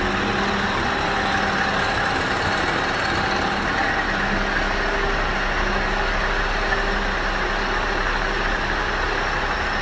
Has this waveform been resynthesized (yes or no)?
no